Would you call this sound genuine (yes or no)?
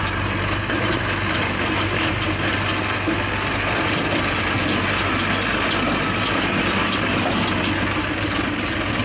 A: yes